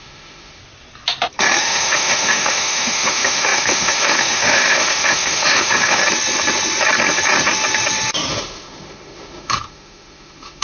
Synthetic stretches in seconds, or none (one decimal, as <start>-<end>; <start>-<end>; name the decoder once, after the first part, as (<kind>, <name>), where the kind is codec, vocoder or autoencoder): 0.0-0.6 (autoencoder, DAC-VAE); 1.6-6.0; 8.3-10.6